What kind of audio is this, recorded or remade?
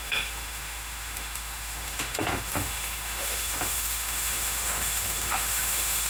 remade